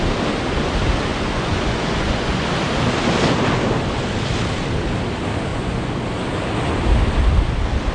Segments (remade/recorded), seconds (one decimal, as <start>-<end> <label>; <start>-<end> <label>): 0.0-1.1 recorded; 1.1-2.4 remade; 2.4-5.5 recorded; 5.5-6.0 remade; 6.0-7.9 recorded